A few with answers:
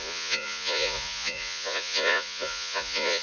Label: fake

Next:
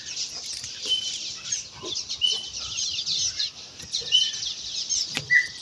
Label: real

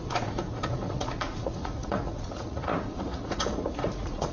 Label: fake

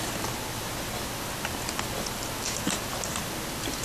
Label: real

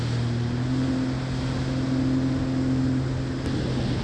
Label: real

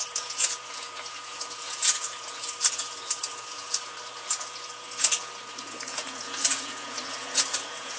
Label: fake